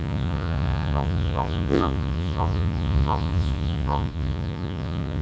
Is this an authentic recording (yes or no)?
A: no